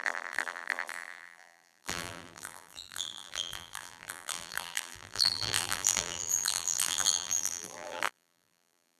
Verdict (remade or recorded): remade